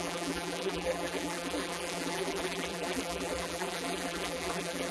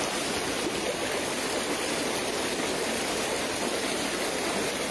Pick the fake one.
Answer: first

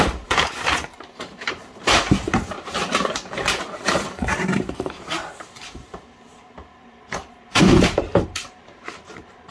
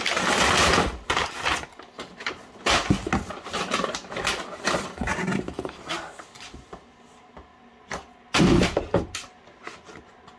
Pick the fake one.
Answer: first